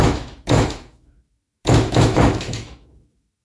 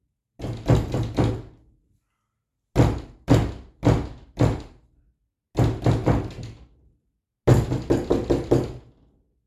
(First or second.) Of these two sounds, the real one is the second